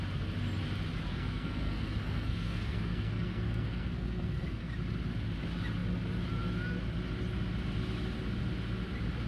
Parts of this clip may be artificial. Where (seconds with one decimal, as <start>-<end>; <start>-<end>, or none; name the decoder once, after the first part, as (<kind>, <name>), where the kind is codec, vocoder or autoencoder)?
1.1-4.7 (codec, SNAC)